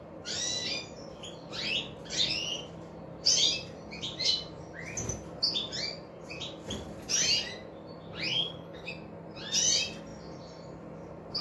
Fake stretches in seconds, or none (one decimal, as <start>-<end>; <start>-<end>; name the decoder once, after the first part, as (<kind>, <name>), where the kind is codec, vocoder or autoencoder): 8.3-8.9 (codec, HILCodec)